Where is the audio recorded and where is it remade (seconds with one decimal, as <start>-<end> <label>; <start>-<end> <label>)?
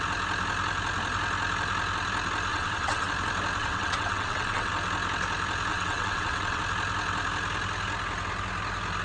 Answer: 0.0-2.5 recorded; 2.5-3.1 remade; 3.1-3.6 recorded; 3.6-4.7 remade; 4.7-5.7 recorded; 5.7-6.6 remade; 6.6-9.0 recorded